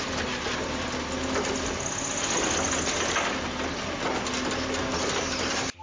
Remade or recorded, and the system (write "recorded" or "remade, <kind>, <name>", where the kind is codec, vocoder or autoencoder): recorded